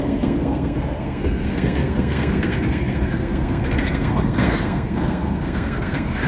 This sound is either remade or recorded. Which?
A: remade